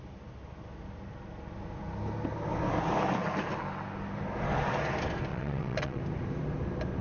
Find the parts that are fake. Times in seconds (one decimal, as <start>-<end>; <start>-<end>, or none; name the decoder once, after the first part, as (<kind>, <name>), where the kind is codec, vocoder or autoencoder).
5.3-6.0 (vocoder, WaveNeXt)